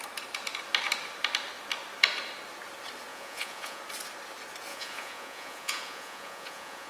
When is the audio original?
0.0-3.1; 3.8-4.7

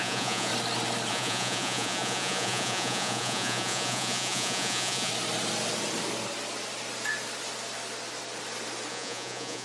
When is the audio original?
0.5-1.1; 5.1-8.9

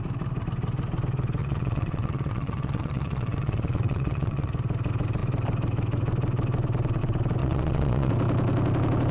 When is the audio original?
0.0-1.4; 4.5-7.4; 8.1-9.1

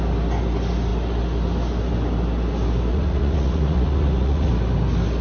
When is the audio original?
0.0-2.9; 4.5-5.2

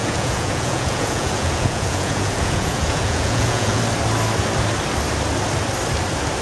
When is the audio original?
3.8-6.4